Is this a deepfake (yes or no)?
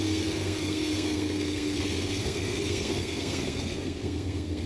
yes